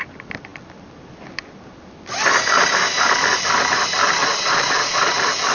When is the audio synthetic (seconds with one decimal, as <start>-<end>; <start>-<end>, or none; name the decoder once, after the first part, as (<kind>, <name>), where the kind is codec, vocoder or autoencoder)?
4.2-5.1 (vocoder, Vocos)